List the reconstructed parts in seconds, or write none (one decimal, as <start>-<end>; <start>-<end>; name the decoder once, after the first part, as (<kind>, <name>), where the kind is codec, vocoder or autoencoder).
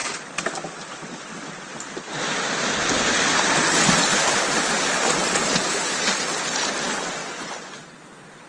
7.2-7.8 (vocoder, Vocos)